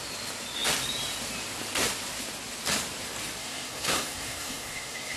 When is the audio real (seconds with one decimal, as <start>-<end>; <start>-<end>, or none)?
0.0-3.4